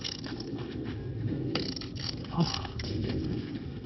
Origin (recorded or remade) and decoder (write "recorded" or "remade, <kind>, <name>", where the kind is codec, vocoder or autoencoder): remade, codec, SNAC